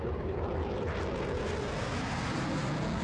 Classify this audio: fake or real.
real